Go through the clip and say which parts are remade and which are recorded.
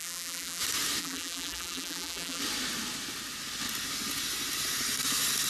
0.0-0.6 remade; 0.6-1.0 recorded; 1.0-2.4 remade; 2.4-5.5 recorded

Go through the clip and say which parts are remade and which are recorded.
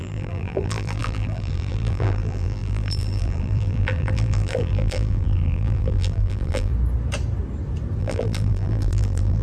0.0-6.7 remade; 6.7-8.0 recorded; 8.0-9.4 remade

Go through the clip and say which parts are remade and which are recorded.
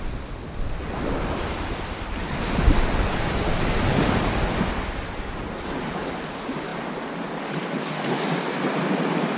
0.0-9.4 recorded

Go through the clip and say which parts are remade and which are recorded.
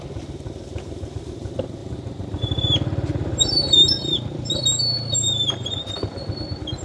0.0-1.8 recorded; 1.8-3.9 remade; 3.9-6.8 recorded